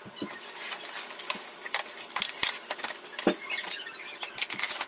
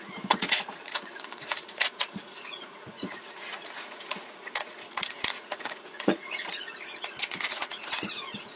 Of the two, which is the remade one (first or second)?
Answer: second